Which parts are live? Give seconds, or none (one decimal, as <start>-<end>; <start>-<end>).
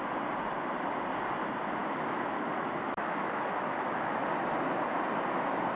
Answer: 0.0-1.8; 4.2-5.8